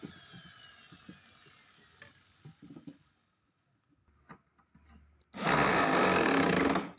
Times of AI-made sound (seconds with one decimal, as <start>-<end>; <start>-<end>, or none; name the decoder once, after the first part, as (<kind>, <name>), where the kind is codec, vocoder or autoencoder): 5.7-6.5 (codec, DAC)